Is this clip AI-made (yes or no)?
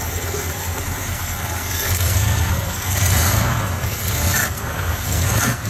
yes